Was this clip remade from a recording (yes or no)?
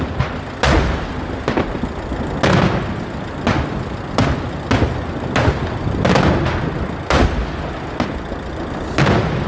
no